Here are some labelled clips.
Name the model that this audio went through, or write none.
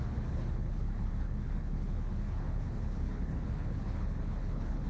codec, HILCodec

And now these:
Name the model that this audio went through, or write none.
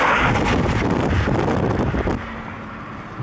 none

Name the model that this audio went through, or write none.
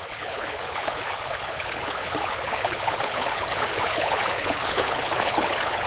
codec, HILCodec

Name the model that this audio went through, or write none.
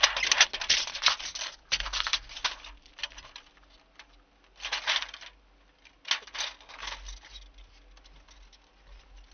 none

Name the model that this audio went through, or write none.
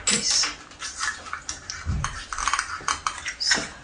none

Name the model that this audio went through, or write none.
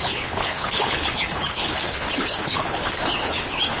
codec, HILCodec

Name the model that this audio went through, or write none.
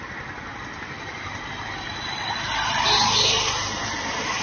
none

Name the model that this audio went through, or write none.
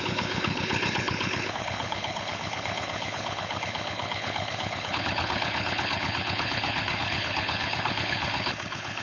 codec, HILCodec